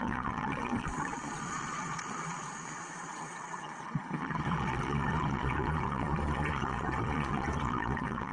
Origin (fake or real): fake